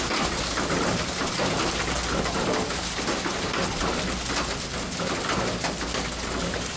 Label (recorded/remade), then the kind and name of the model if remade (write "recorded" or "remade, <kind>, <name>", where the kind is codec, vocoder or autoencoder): recorded